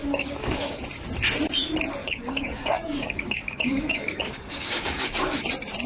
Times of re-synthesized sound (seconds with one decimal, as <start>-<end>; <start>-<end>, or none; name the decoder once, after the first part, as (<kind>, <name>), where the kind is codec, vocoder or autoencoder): 0.0-0.8 (codec, DAC); 2.0-5.5